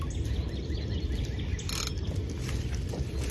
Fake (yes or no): no